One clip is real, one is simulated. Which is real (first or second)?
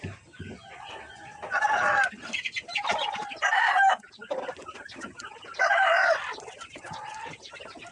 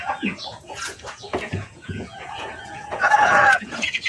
first